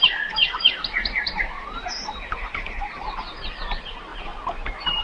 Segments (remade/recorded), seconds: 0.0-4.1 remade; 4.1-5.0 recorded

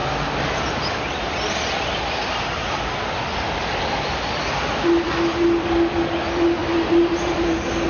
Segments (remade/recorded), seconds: 0.0-6.6 recorded; 6.6-7.9 remade

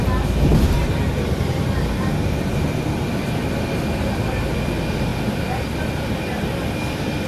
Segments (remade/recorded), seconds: 0.0-7.3 recorded

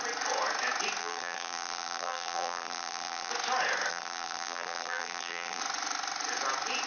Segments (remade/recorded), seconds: 0.0-1.0 recorded; 1.0-3.3 remade; 3.3-3.9 recorded; 3.9-5.6 remade; 5.6-6.9 recorded

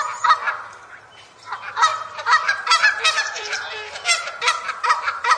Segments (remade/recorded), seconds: 0.0-0.4 remade; 0.4-0.9 recorded; 0.9-5.4 remade

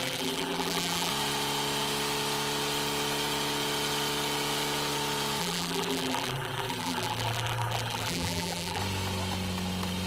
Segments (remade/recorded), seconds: 0.0-1.1 remade; 1.1-5.4 recorded; 5.4-8.8 remade; 8.8-10.1 recorded

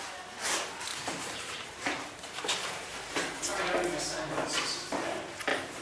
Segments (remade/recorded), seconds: 0.0-0.9 recorded; 0.9-2.4 remade; 2.4-5.8 recorded